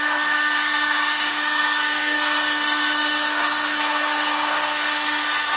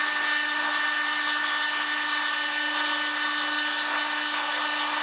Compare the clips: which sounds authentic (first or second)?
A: second